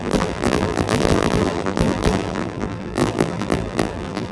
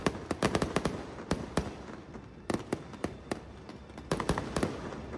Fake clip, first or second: first